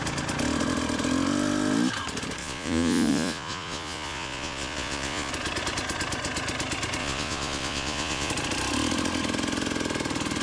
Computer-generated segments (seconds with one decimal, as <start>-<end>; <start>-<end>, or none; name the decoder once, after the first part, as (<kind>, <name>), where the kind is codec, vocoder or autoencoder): 2.4-5.3 (vocoder, Vocos); 7.0-8.3